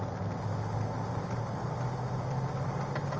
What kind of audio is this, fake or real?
real